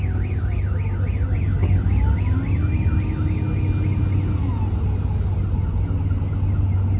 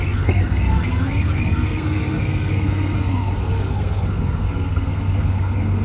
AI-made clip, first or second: second